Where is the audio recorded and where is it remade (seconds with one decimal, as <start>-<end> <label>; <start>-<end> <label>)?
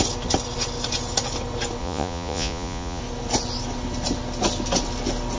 0.0-1.8 recorded; 1.8-3.0 remade; 3.0-5.4 recorded